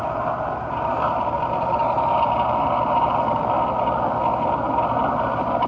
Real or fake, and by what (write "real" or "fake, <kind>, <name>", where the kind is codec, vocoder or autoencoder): real